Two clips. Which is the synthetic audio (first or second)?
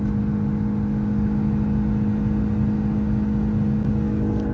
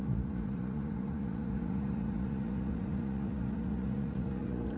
second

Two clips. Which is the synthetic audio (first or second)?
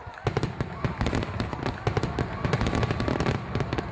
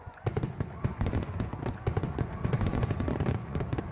second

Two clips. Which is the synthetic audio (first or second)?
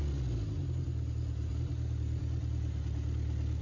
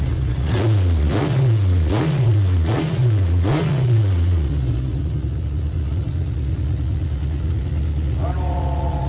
second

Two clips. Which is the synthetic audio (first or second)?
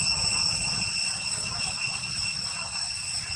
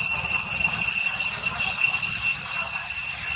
first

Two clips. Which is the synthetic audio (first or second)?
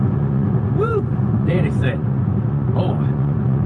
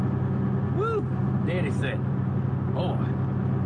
first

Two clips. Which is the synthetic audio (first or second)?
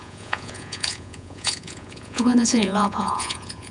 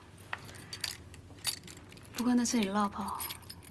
first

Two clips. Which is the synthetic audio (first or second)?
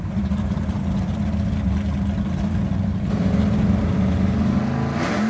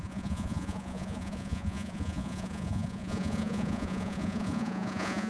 second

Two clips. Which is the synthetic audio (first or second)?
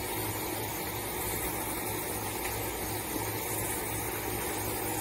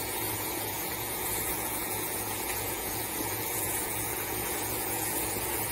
second